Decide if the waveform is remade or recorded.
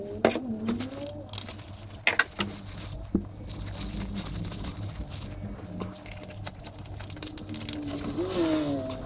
recorded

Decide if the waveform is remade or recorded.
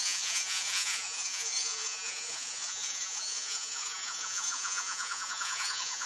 remade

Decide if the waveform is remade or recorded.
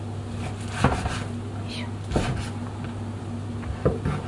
recorded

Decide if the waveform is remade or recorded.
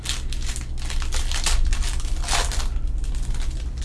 recorded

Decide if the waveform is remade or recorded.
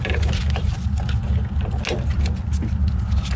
recorded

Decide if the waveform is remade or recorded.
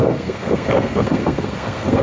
remade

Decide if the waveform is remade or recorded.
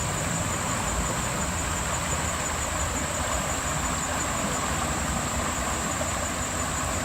remade